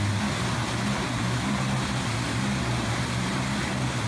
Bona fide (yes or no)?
yes